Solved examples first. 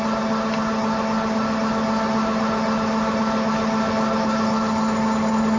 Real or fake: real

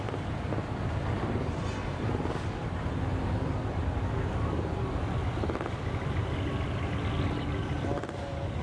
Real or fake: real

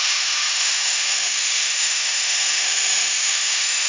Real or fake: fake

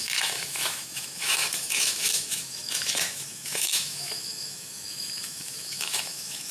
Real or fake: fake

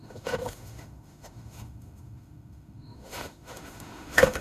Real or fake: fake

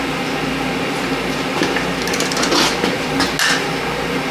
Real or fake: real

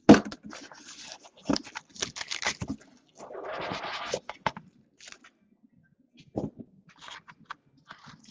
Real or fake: real